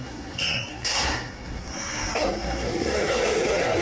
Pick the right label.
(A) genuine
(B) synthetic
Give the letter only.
B